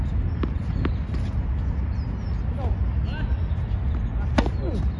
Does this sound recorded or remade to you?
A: recorded